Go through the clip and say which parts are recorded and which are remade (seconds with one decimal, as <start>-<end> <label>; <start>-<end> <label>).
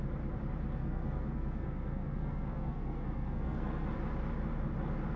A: 0.0-0.8 recorded; 0.8-3.9 remade; 3.9-5.2 recorded